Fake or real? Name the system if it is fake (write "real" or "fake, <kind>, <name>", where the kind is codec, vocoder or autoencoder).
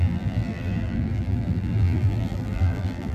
fake, vocoder, BigVGAN v2